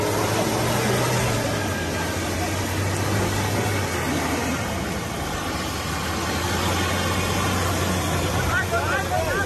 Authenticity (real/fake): real